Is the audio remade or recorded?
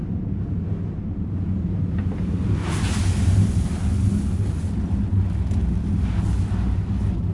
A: recorded